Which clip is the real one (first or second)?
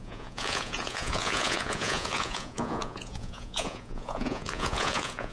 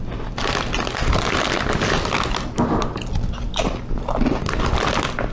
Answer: second